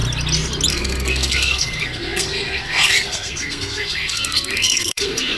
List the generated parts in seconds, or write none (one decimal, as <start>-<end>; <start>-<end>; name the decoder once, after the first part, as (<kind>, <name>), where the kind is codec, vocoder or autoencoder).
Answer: 0.7-5.4 (codec, SNAC)